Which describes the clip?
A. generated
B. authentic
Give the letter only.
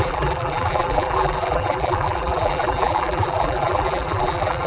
A